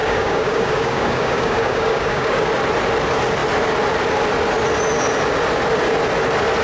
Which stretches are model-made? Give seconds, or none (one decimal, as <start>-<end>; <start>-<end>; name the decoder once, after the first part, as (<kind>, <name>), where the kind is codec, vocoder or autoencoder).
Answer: 0.0-2.5 (codec, DAC)